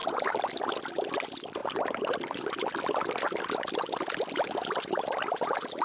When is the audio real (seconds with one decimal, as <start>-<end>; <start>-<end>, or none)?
0.0-5.8